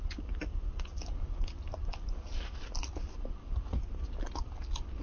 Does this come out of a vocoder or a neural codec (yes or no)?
no